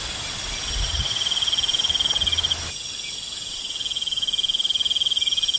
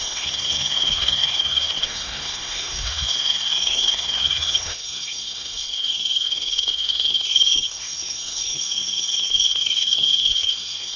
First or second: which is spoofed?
second